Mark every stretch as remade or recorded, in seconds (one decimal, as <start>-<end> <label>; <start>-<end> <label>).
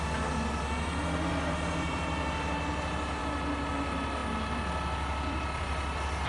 0.0-1.3 recorded; 1.3-3.2 remade; 3.2-6.3 recorded